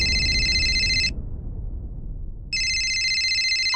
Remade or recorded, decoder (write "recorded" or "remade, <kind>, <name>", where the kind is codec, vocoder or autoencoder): recorded